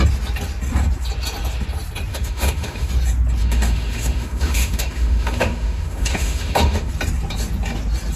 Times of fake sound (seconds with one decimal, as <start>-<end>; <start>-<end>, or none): 2.1-2.9; 3.4-6.9